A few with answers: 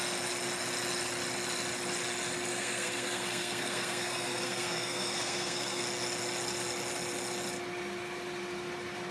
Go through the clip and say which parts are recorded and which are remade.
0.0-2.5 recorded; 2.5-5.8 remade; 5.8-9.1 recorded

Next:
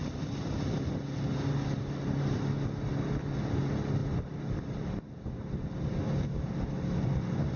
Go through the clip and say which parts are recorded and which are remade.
0.0-1.0 remade; 1.0-4.0 recorded; 4.0-5.3 remade; 5.3-7.6 recorded

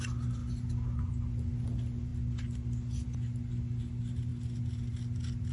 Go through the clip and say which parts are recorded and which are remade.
0.0-5.5 recorded

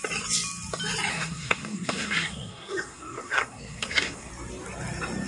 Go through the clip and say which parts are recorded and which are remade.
0.0-1.1 recorded; 1.1-4.3 remade; 4.3-5.3 recorded

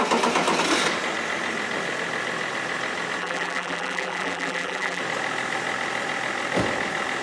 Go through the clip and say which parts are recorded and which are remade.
0.0-3.2 recorded; 3.2-5.0 remade; 5.0-7.2 recorded

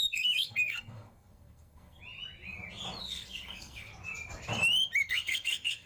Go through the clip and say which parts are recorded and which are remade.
0.0-2.0 remade; 2.0-3.0 recorded; 3.0-3.9 remade; 3.9-5.0 recorded; 5.0-5.9 remade